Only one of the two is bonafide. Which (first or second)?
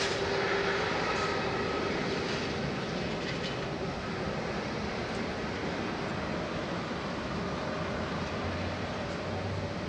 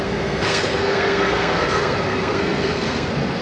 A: first